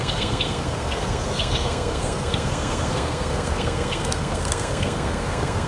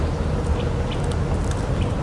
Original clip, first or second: second